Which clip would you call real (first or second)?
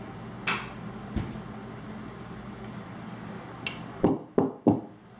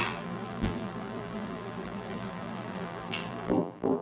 first